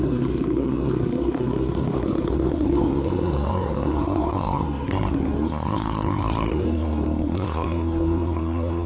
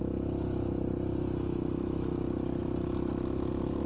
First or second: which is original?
second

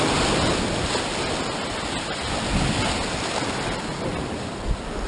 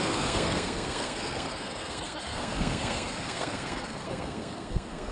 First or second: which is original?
first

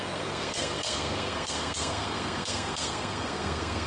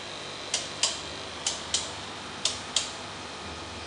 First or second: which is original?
second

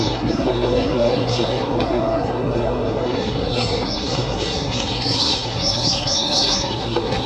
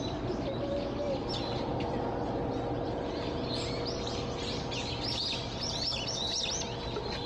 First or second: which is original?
second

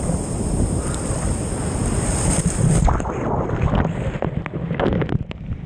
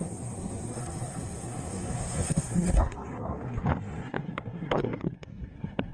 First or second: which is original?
first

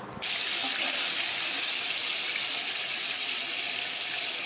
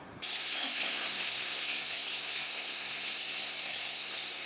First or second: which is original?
first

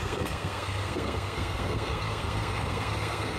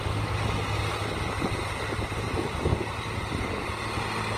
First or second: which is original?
second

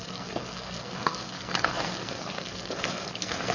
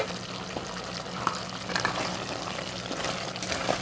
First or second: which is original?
second